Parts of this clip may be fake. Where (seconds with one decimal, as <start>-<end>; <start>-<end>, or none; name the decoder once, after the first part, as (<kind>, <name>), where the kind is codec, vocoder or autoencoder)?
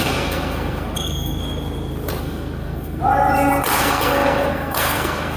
0.0-1.4 (codec, SNAC); 2.2-3.0; 3.8-5.4